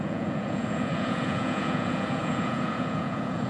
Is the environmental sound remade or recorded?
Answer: remade